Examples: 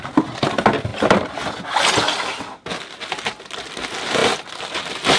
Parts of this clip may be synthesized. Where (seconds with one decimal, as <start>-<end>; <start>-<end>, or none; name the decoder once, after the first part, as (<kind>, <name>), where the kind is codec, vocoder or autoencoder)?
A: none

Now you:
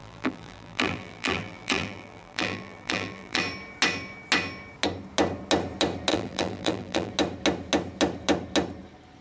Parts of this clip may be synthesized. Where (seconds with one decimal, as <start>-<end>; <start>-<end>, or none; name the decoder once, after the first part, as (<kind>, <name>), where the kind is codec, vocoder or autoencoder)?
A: 0.0-3.4 (vocoder, BigVGAN v2); 6.1-7.1

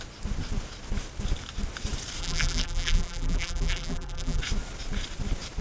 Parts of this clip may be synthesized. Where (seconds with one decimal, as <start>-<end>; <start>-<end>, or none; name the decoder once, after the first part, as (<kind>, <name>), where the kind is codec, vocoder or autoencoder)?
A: 2.2-4.4 (vocoder, BigVGAN v2)

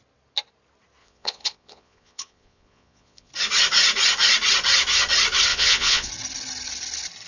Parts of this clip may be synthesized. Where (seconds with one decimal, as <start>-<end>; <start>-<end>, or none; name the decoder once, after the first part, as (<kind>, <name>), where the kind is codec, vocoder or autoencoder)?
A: 1.0-3.3 (vocoder, Vocos); 5.5-6.1